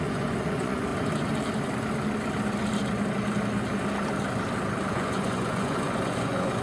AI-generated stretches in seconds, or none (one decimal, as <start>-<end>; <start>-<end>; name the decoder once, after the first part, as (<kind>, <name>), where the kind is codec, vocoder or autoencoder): 0.0-0.9 (vocoder, Vocos); 4.9-6.6